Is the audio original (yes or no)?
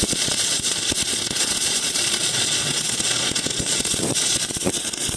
no